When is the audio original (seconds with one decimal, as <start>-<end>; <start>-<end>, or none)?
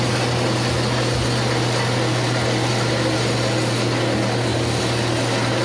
0.0-5.6